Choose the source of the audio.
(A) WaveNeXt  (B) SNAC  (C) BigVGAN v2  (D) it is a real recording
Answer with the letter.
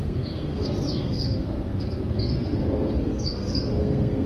B